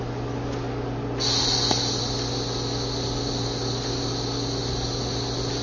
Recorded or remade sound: recorded